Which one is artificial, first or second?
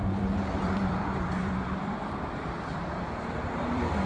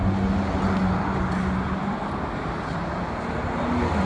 first